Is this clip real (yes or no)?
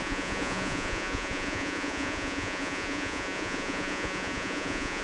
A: no